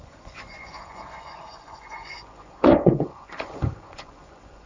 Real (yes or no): no